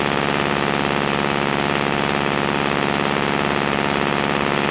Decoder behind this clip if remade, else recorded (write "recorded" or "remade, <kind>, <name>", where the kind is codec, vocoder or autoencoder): recorded